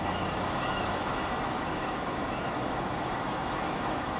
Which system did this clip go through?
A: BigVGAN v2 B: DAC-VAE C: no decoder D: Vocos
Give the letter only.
B